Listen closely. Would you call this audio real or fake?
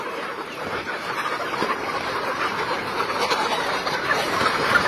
fake